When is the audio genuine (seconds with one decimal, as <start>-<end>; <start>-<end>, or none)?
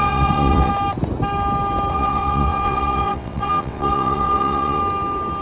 0.7-1.9; 4.8-5.4